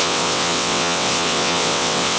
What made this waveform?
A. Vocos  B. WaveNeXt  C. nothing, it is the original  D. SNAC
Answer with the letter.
B